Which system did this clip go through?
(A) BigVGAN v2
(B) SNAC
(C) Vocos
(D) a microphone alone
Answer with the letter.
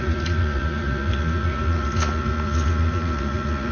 C